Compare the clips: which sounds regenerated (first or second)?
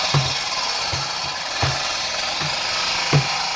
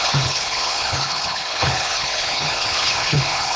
second